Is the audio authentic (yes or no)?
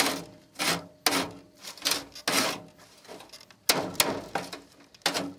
yes